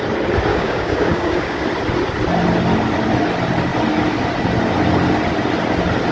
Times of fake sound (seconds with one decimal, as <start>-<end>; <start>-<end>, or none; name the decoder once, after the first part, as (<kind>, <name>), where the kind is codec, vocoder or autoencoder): 0.5-1.6 (codec, DAC)